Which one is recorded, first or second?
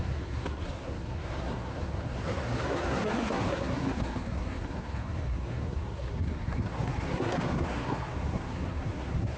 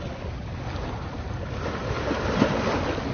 second